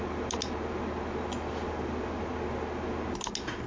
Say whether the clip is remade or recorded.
recorded